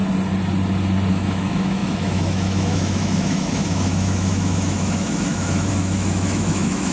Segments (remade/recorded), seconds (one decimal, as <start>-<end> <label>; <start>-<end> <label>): 0.0-1.1 recorded; 1.1-6.9 remade